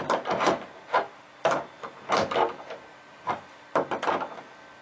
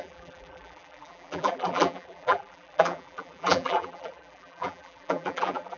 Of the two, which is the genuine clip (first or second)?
first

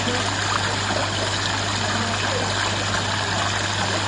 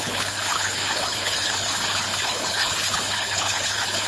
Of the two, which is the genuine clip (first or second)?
first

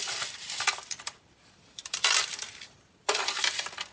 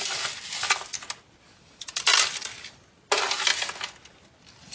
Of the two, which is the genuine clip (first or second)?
second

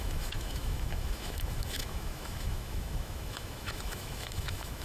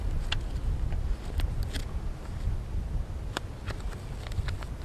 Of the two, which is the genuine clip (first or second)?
second